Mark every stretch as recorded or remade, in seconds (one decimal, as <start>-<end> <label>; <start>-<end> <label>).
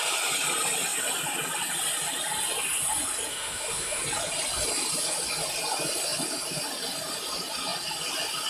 0.0-3.3 recorded; 3.3-4.0 remade; 4.0-8.5 recorded